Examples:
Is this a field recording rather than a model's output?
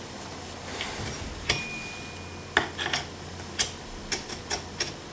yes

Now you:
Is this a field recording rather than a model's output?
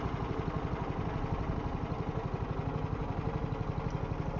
yes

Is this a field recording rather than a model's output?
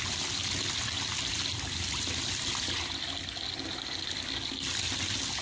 yes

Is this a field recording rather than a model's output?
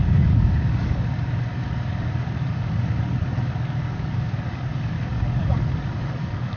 no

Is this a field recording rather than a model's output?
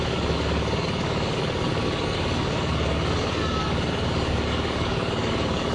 no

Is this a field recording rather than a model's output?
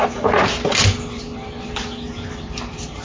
yes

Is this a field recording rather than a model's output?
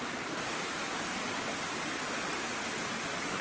yes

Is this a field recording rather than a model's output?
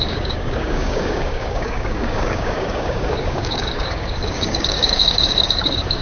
no